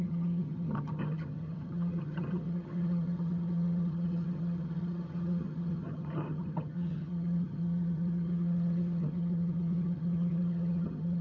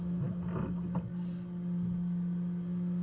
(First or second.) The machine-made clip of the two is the first